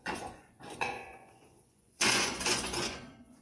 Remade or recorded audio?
remade